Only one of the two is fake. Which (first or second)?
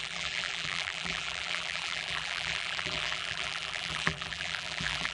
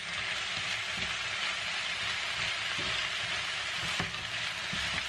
first